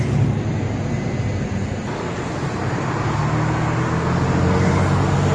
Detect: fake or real real